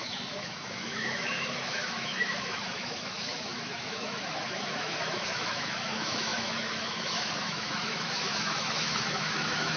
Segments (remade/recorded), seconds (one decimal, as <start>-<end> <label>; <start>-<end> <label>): 0.0-9.8 remade